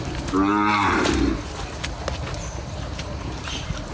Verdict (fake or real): real